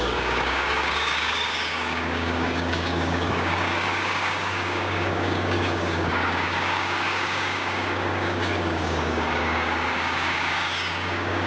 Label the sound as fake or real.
fake